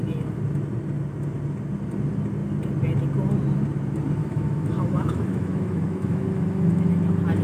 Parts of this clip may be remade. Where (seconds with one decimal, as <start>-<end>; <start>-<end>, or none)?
4.2-6.9